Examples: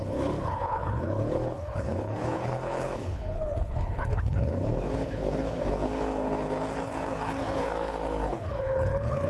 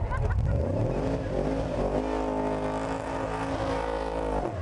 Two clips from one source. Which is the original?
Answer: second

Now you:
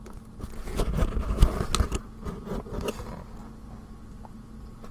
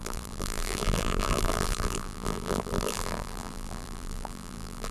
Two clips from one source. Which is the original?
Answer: first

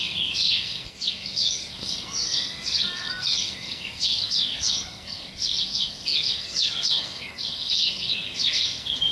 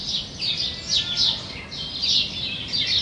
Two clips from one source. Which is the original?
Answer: second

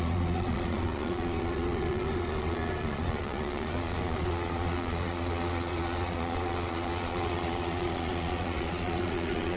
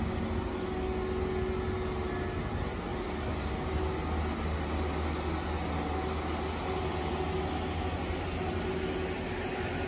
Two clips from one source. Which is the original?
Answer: second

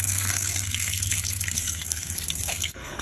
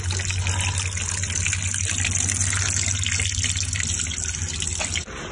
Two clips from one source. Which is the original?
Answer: second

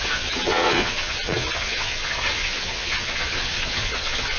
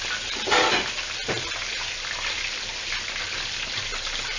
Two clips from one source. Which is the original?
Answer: second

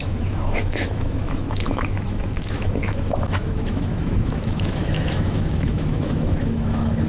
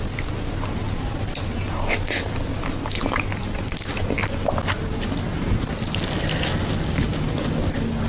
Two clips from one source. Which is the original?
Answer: second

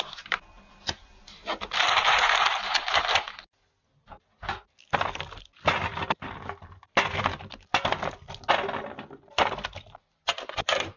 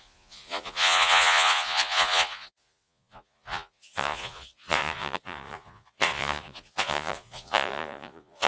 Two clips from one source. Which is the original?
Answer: first